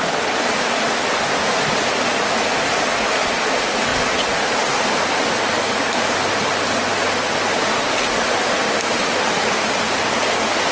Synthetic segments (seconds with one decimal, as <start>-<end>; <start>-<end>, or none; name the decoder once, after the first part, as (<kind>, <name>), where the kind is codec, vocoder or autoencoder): none